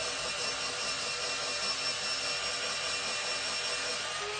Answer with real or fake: real